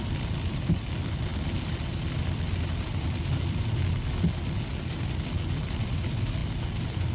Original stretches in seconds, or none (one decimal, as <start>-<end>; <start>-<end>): 0.0-7.1